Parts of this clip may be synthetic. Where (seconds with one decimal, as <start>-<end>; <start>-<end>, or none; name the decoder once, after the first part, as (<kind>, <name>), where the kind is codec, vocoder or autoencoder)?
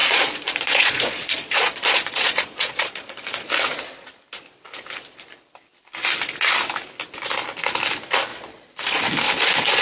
0.0-3.5 (vocoder, Vocos); 8.3-9.0